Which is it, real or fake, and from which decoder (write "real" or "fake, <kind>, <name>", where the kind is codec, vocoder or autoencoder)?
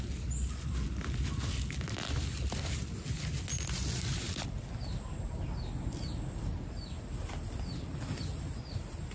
real